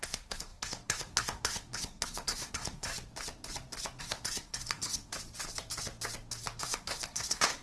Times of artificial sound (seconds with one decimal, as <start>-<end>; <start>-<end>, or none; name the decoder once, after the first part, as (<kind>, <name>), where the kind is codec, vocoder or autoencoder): 0.0-2.9 (codec, SNAC); 4.0-5.1; 6.6-7.6